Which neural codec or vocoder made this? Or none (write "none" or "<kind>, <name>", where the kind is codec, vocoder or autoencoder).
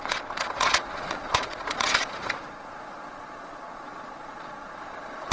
vocoder, Vocos